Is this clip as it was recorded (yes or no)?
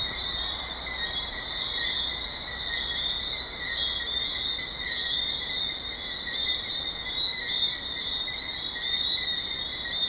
yes